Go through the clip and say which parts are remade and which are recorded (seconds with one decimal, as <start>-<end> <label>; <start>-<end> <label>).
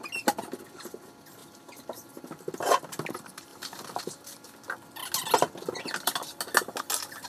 0.0-1.4 recorded; 1.4-2.1 remade; 2.1-3.5 recorded; 3.5-4.0 remade; 4.0-7.3 recorded